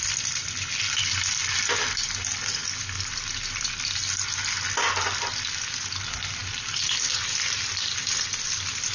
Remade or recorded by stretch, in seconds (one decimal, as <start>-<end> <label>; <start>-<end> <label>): 0.0-0.4 recorded; 0.4-1.6 remade; 1.6-6.4 recorded; 6.4-8.0 remade; 8.0-8.9 recorded